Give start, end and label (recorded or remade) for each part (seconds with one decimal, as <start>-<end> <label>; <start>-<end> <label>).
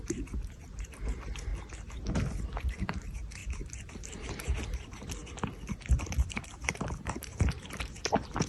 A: 0.0-1.5 remade; 1.5-2.4 recorded; 2.4-3.4 remade; 3.4-3.9 recorded; 3.9-5.2 remade; 5.2-6.0 recorded; 6.0-8.5 remade